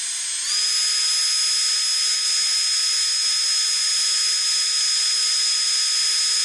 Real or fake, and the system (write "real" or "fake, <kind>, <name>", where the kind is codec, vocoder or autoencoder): real